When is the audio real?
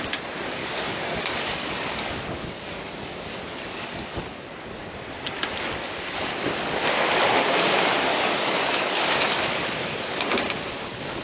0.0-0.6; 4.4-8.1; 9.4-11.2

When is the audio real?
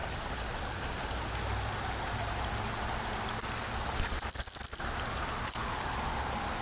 0.0-6.6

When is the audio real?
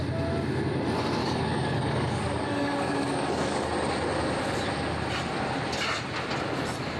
0.0-1.2; 3.7-7.0